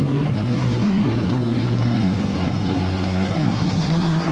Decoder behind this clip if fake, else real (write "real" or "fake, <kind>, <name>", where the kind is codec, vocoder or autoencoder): fake, codec, SNAC